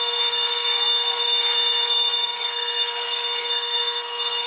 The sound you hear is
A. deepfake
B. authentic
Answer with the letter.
A